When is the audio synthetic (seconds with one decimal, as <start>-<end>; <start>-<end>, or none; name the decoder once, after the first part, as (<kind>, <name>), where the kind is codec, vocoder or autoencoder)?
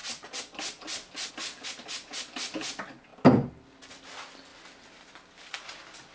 none